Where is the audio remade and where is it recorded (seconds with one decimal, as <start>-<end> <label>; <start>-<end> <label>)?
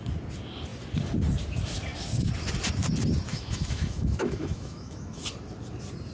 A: 0.0-3.3 recorded; 3.3-5.2 remade; 5.2-6.1 recorded